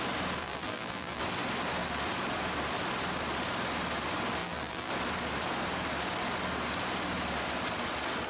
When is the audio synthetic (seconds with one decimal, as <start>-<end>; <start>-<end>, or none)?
0.4-1.2; 4.4-4.9